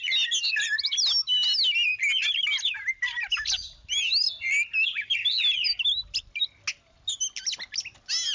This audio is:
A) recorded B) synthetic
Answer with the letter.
A